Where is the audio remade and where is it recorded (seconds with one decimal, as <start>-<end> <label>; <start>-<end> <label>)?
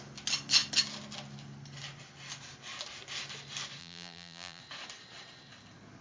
0.0-3.8 recorded; 3.8-4.6 remade; 4.6-6.0 recorded